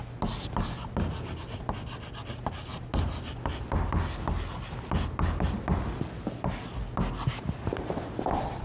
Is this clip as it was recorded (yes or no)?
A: yes